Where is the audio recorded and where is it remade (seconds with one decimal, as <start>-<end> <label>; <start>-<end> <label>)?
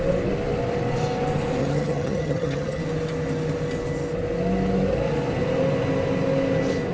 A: 0.0-1.6 recorded; 1.6-2.8 remade; 2.8-6.9 recorded